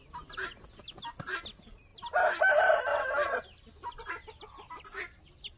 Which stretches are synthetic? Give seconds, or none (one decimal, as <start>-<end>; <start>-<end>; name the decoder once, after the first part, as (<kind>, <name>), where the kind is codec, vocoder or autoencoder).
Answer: none